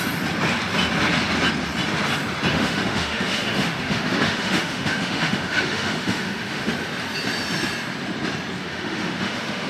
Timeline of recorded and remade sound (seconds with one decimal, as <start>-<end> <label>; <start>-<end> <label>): 0.0-2.5 recorded; 2.5-6.7 remade; 6.7-8.6 recorded; 8.6-9.7 remade